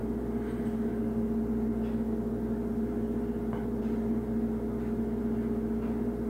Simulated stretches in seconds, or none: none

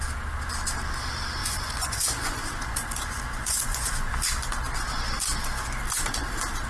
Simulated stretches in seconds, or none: 1.4-4.2 (vocoder, Vocos)

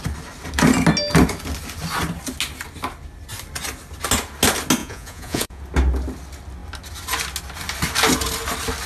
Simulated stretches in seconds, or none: 4.8-5.6 (vocoder, Vocos)

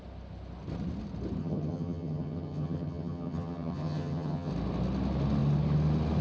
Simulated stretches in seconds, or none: 1.4-4.5 (vocoder, HiFi-GAN)

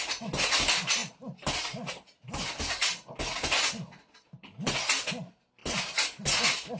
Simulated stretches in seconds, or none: none

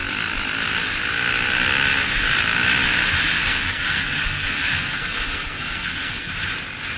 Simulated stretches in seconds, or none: 3.4-6.3 (codec, SNAC)